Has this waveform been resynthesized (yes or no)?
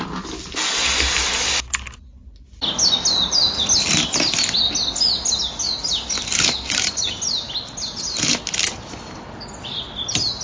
no